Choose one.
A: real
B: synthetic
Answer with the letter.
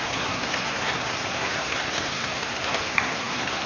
B